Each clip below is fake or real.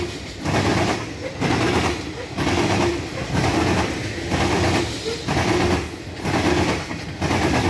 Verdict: real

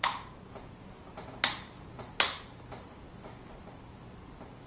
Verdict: real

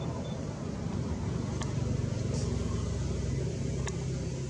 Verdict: real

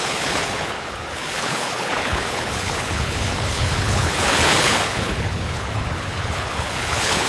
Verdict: fake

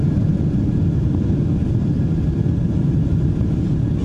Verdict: real